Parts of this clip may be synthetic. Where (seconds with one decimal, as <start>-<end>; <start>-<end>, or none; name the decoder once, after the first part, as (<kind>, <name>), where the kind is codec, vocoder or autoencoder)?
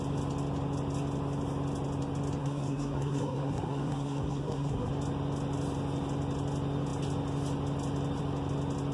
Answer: 2.4-4.9 (codec, SNAC)